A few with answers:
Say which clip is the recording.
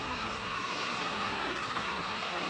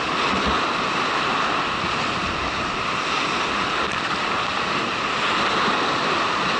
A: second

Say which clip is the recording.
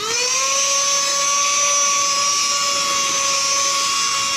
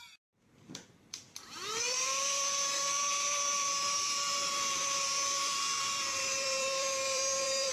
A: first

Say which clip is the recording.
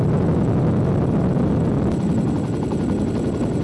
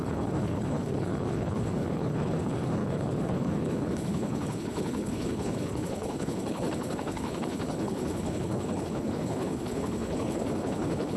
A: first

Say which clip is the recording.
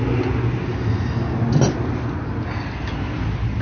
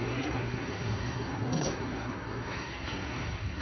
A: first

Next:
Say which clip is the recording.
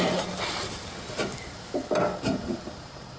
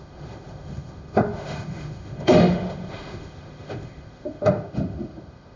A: first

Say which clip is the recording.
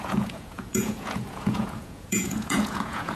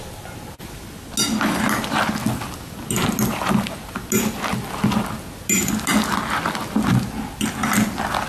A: second